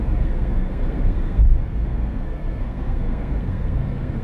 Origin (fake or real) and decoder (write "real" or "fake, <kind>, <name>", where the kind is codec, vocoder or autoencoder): fake, codec, SNAC